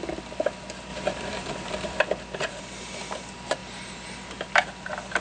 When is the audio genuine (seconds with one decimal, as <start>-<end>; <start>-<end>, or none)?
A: 0.0-0.9; 2.0-5.2